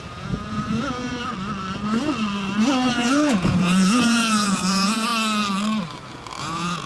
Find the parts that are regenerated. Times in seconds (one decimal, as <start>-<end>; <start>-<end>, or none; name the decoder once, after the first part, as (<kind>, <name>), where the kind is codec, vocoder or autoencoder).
0.0-1.1 (vocoder, Vocos); 2.9-5.1; 6.4-6.9